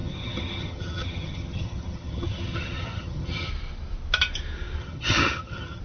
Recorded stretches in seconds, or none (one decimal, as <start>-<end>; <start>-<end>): 3.5-4.8